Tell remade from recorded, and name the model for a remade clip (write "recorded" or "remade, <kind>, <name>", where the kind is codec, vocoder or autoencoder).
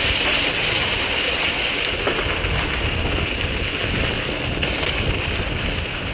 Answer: recorded